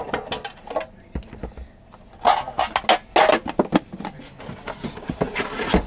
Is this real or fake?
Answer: real